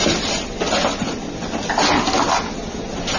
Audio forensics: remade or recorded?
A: recorded